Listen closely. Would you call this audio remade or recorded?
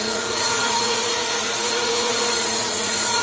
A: remade